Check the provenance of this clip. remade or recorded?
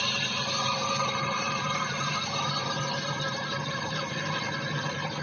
recorded